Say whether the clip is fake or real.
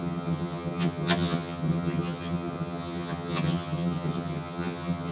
fake